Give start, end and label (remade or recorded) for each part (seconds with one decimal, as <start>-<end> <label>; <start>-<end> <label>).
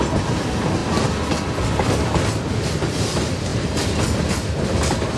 0.0-5.2 recorded